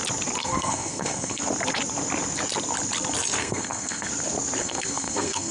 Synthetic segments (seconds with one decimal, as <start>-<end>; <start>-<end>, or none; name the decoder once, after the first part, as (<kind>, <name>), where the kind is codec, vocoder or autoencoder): 0.4-1.4 (codec, SNAC); 3.4-4.1; 4.6-5.5